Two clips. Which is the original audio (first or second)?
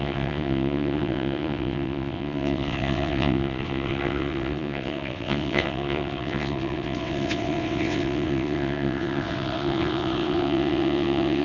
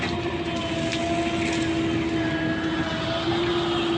second